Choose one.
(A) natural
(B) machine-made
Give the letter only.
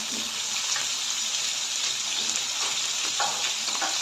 A